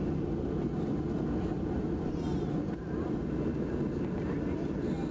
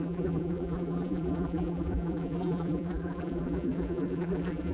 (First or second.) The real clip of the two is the first